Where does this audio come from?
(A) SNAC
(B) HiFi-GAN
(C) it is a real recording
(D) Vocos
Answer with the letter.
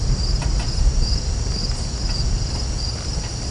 C